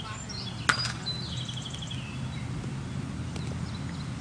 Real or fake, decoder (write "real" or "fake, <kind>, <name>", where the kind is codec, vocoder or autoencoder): real